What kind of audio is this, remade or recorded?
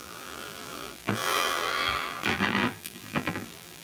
remade